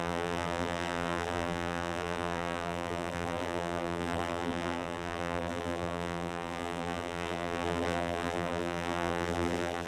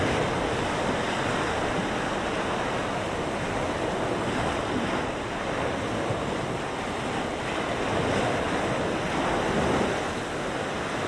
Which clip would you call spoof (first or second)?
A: first